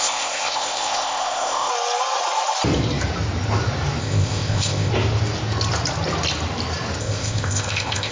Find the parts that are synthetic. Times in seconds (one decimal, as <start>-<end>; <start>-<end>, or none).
0.0-1.7; 4.0-4.9; 7.0-8.1

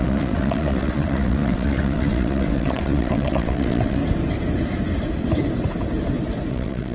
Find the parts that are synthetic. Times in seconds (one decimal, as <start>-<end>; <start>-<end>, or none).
0.0-4.0; 6.5-6.9

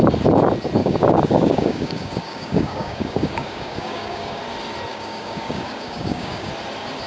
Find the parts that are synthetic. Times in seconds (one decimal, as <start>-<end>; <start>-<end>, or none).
0.8-4.4; 4.9-6.5

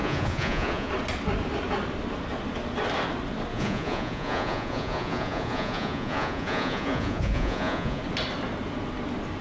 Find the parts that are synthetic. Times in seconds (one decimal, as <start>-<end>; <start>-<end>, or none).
0.0-0.9; 3.5-8.0

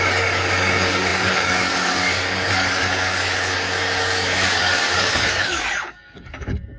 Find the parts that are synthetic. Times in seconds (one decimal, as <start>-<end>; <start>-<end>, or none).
0.0-6.8